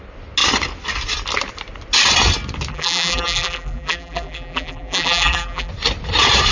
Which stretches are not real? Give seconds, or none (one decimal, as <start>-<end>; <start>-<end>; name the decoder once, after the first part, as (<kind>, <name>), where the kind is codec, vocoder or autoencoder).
2.7-5.7 (vocoder, BigVGAN v2)